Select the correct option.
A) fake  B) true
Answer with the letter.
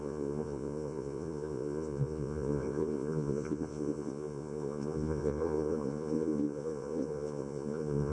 A